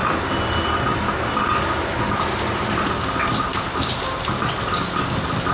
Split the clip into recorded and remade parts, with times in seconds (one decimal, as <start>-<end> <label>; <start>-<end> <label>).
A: 0.0-5.5 recorded